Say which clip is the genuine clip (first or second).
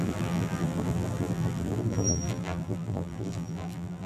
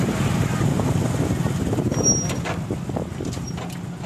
second